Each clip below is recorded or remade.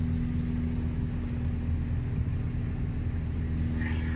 recorded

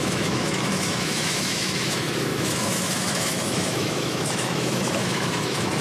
remade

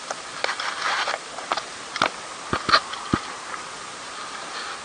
recorded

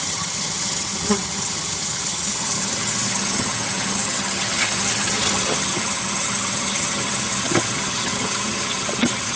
remade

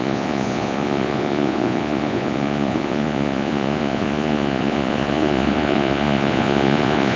remade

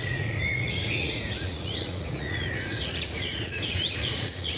remade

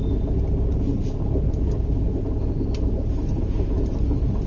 recorded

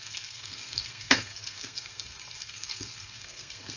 remade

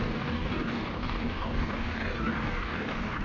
remade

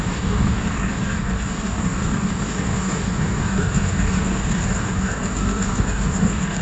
remade